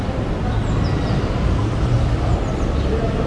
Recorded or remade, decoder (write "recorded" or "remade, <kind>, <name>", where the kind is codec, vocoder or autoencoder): recorded